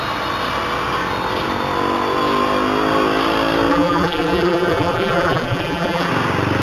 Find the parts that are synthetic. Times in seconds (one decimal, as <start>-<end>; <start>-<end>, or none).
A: 3.7-6.1

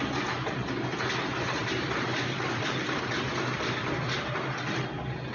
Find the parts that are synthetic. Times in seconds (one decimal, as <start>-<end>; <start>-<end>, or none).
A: 1.6-4.8

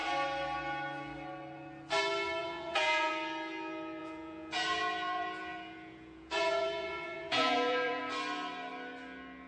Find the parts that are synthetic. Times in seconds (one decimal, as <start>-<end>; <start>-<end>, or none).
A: 2.4-3.1; 4.0-8.0